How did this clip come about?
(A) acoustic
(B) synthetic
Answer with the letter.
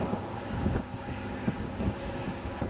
B